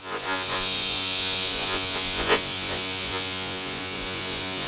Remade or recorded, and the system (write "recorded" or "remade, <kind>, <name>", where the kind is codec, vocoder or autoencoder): remade, vocoder, Vocos